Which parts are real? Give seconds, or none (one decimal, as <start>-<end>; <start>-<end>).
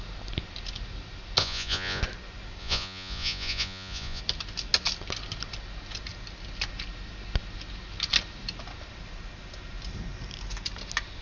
0.0-1.4; 2.0-2.6; 4.2-11.2